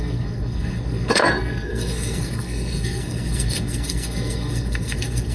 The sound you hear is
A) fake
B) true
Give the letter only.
A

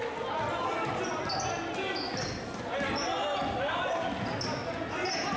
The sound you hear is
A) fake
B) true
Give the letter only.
B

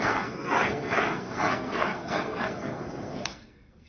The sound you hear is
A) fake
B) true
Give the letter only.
A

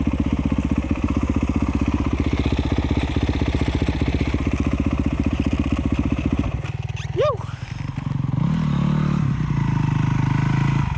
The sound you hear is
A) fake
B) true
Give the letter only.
B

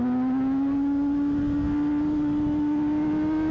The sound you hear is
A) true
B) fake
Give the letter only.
A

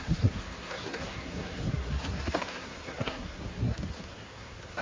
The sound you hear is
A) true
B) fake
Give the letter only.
B